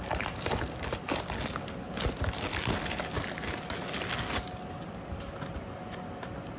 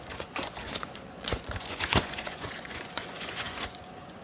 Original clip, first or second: first